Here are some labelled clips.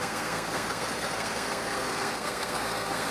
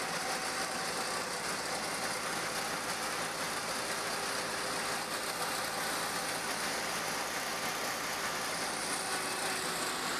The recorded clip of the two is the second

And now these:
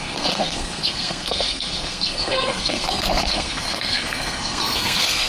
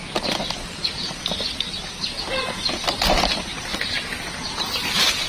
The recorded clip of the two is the second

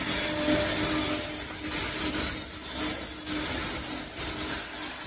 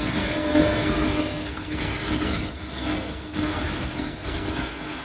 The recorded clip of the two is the first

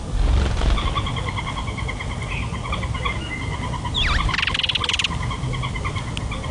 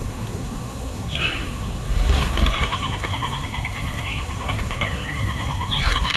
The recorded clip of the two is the first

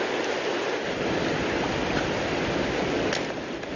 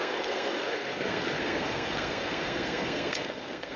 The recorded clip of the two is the first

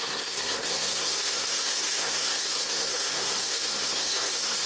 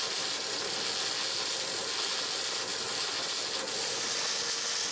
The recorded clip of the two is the second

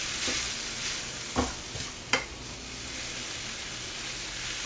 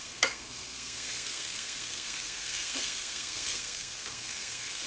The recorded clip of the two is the first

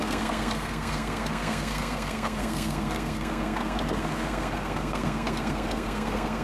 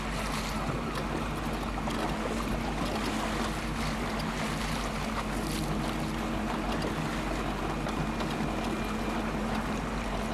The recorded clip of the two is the second